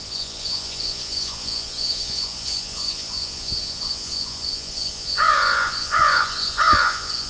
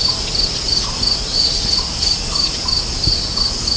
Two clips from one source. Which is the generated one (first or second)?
first